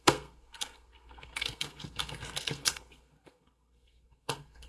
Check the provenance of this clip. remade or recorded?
remade